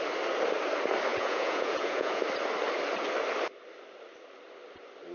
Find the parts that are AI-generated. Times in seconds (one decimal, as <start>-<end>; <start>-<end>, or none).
1.1-2.2